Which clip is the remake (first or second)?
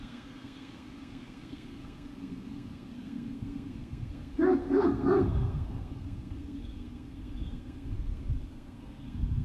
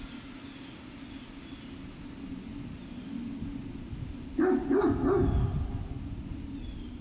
first